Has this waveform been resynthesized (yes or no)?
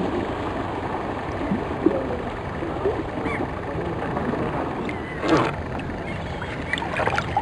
no